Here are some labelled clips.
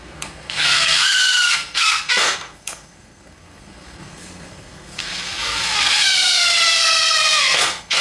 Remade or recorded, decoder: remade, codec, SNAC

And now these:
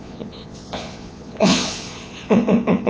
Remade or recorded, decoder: remade, vocoder, Vocos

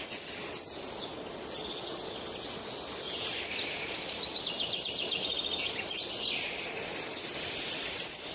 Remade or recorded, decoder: recorded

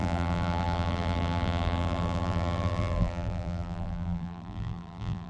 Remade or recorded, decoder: remade, vocoder, BigVGAN v2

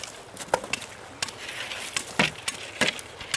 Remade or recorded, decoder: recorded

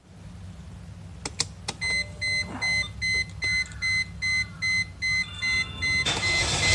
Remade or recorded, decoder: recorded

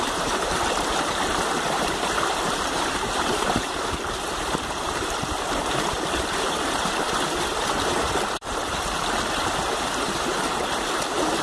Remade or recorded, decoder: remade, vocoder, BigVGAN v2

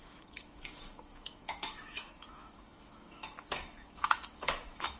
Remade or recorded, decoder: remade, autoencoder, DAC-VAE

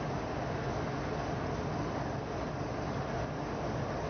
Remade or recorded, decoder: recorded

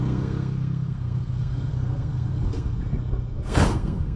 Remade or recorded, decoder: remade, codec, SNAC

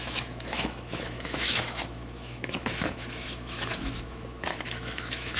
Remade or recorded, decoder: remade, autoencoder, DAC-VAE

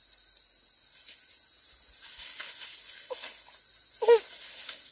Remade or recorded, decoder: recorded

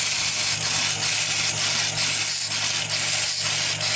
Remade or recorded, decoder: recorded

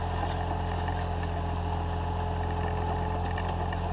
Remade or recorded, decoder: recorded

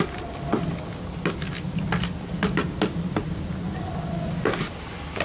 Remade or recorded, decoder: recorded